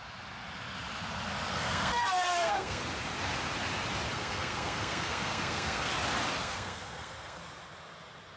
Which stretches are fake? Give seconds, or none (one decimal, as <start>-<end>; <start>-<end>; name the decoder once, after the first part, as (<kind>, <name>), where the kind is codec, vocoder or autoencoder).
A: 1.5-2.8 (codec, SNAC); 4.1-5.9; 6.4-7.4